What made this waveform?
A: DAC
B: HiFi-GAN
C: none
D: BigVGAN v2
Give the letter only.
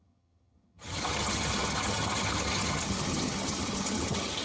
B